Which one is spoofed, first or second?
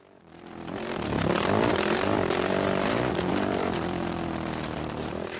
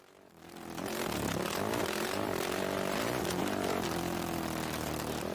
first